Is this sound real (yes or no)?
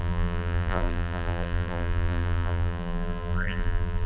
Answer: no